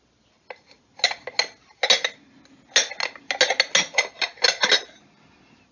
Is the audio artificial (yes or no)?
no